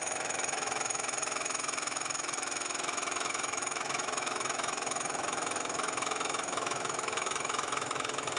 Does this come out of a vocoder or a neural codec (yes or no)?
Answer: yes